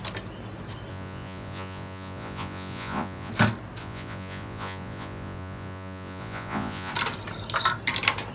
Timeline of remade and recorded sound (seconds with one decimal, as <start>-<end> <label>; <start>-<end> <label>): 0.0-0.9 recorded; 0.9-3.3 remade; 3.3-3.8 recorded; 3.8-6.9 remade; 6.9-8.3 recorded